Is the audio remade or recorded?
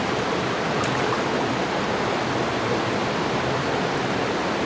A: recorded